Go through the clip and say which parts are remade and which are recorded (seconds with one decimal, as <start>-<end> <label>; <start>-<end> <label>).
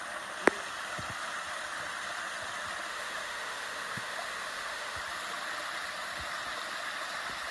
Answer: 0.0-2.9 recorded; 2.9-5.0 remade; 5.0-7.5 recorded